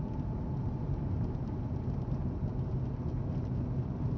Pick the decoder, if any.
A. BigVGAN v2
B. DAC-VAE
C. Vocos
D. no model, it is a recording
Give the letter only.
D